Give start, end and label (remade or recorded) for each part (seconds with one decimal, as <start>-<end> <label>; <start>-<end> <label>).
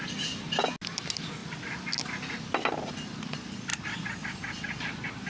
0.0-5.3 recorded